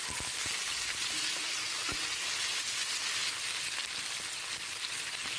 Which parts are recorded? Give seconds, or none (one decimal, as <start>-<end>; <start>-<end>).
2.0-3.2; 4.1-5.4